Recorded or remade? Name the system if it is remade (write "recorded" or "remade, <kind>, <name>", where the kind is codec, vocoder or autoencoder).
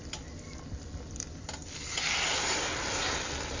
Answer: recorded